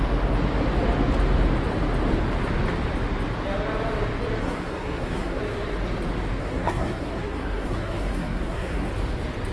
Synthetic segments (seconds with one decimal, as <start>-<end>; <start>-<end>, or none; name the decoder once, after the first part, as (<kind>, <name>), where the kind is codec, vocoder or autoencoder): 4.4-5.4 (codec, SNAC); 6.4-8.9